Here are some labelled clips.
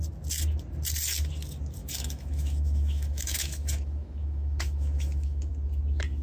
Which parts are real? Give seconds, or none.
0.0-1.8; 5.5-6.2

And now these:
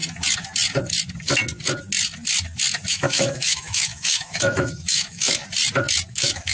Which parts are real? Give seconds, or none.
0.0-2.9; 5.4-6.1

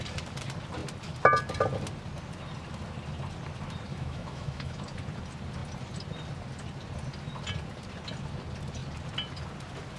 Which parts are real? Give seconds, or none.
0.0-3.9; 4.8-10.0

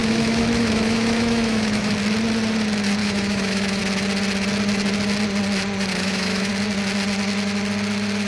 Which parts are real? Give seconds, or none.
1.9-3.0; 3.8-5.9; 6.5-8.3

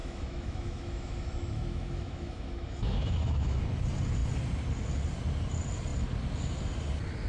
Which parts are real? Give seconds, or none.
3.6-7.3

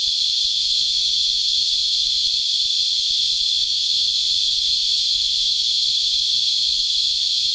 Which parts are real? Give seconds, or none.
0.0-0.5; 2.3-3.2

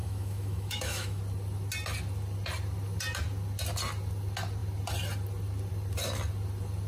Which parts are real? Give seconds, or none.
1.2-6.9

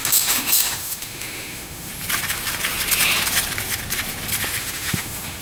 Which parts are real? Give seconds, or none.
1.9-4.6